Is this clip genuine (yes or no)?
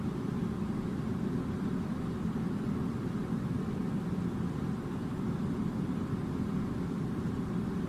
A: no